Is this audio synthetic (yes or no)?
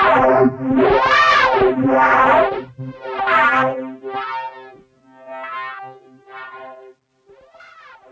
no